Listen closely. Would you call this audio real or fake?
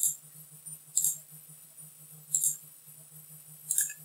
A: real